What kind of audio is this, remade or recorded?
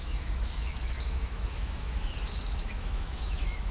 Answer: remade